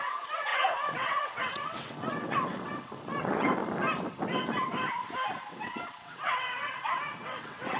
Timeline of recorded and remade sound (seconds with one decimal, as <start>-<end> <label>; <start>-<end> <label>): 0.0-3.6 remade; 3.6-5.5 recorded; 5.5-7.8 remade